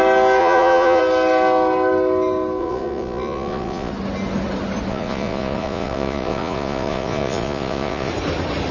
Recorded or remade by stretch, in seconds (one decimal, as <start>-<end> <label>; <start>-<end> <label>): 0.0-0.4 recorded; 0.4-1.0 remade; 1.0-2.6 recorded; 2.6-3.9 remade; 3.9-4.9 recorded; 4.9-8.1 remade; 8.1-8.7 recorded